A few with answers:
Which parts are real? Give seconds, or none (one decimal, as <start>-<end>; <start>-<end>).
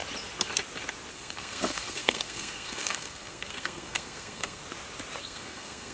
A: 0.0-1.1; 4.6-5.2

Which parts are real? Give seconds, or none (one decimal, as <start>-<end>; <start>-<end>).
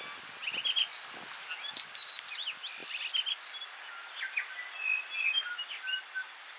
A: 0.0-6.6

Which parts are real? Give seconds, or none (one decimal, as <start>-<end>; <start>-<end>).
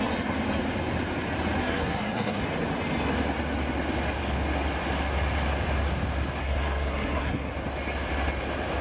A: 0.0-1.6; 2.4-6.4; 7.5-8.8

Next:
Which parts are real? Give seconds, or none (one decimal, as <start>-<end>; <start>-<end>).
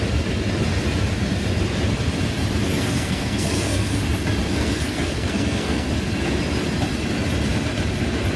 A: 0.0-2.7; 4.0-4.4; 5.9-8.4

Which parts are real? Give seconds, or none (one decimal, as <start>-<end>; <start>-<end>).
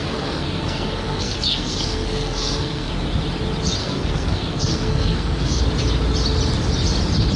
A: 2.9-3.8; 5.6-7.4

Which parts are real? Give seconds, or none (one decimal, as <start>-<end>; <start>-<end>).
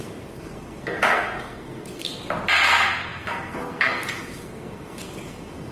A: 2.1-2.7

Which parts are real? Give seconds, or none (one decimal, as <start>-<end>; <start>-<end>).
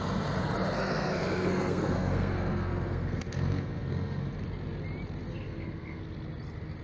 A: 0.0-0.4; 4.4-5.3; 6.0-6.8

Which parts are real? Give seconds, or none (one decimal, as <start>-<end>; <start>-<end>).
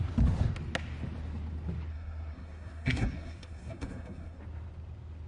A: 0.0-1.9; 4.4-5.3